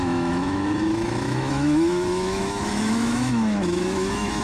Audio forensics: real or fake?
fake